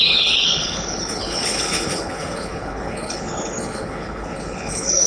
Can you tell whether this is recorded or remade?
remade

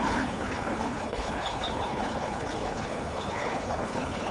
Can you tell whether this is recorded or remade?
remade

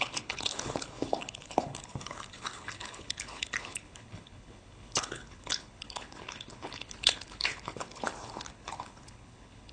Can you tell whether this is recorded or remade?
remade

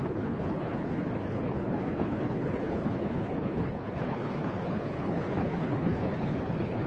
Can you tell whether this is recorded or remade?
remade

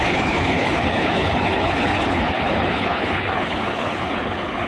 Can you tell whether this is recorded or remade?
remade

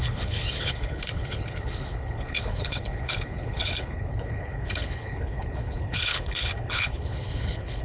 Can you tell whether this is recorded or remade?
remade